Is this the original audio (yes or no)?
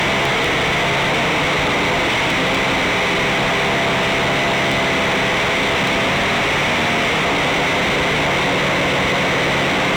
yes